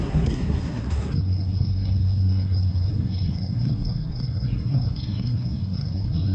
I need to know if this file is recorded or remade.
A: remade